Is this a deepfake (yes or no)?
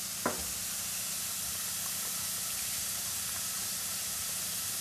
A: no